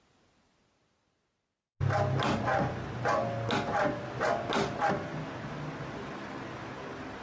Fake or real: real